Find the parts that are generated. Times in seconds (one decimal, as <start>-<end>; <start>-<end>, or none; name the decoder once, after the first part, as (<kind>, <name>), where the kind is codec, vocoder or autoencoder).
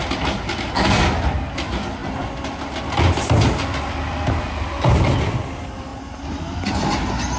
none